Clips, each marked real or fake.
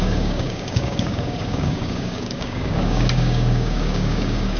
fake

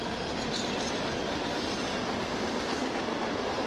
real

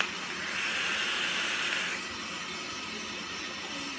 real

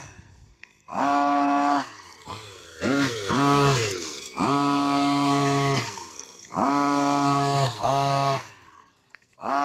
fake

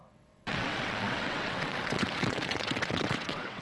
fake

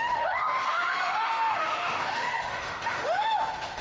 fake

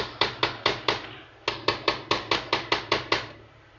real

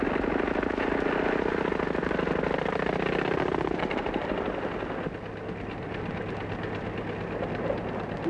real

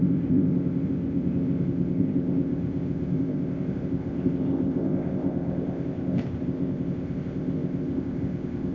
fake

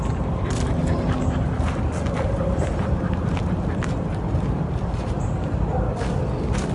real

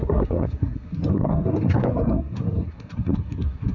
fake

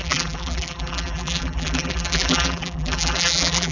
fake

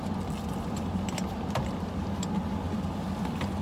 real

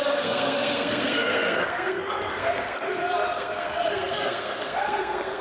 fake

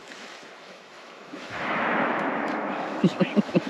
fake